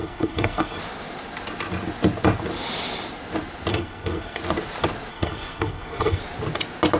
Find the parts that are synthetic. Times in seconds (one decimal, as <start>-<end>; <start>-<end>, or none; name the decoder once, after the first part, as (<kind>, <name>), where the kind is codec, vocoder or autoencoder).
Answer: 0.0-0.8 (codec, SNAC); 3.7-4.4; 5.1-6.2